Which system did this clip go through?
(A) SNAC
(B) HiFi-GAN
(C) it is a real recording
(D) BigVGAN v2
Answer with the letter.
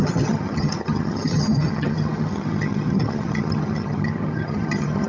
B